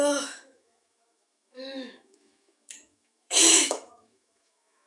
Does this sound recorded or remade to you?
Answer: remade